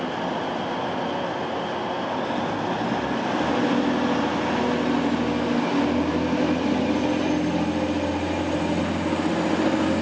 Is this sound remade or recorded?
recorded